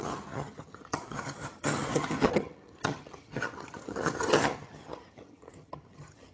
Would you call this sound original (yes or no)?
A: no